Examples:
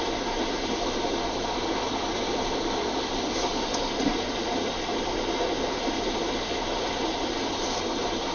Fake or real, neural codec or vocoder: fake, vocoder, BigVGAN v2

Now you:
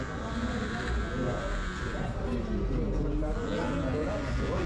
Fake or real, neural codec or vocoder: real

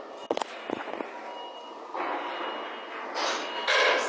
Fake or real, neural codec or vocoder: real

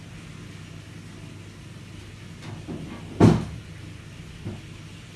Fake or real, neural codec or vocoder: real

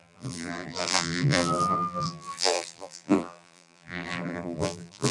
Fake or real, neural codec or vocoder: fake, vocoder, BigVGAN v2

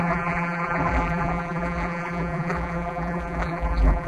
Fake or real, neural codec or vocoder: fake, vocoder, BigVGAN v2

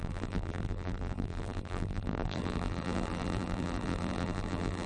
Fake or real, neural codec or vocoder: fake, vocoder, BigVGAN v2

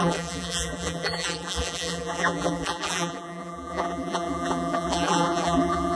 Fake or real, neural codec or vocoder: fake, vocoder, BigVGAN v2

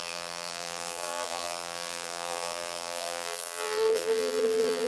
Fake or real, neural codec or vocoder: fake, vocoder, BigVGAN v2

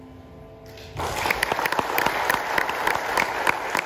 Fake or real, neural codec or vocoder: real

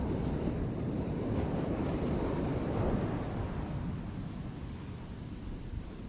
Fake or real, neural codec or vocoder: real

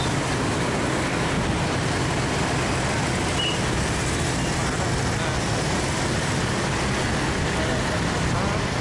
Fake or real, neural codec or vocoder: real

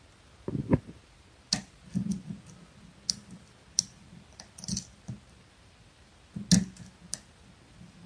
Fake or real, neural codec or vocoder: real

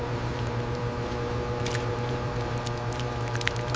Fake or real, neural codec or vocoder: fake, vocoder, BigVGAN v2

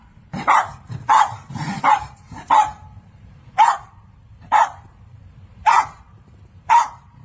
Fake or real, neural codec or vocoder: fake, vocoder, BigVGAN v2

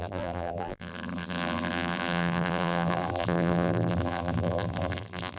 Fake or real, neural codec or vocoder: fake, vocoder, BigVGAN v2